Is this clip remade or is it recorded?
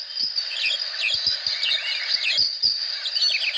recorded